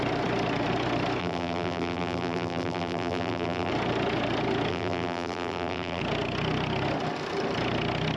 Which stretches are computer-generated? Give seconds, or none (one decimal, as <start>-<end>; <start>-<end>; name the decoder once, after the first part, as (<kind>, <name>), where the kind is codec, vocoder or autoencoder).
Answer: 1.2-3.7 (vocoder, BigVGAN v2); 4.7-6.0